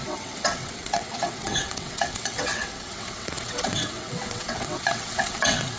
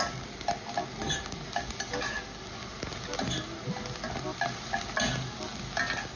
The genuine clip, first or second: second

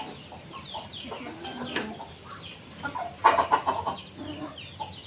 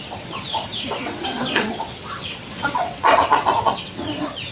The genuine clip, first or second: first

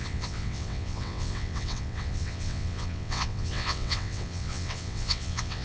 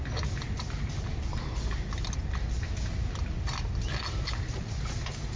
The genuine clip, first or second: second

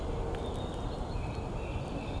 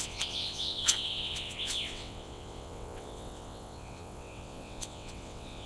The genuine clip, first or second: first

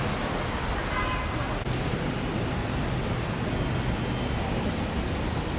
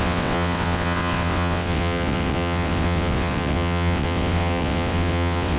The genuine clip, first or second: first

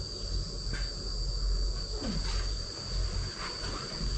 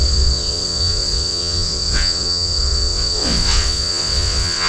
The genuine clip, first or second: first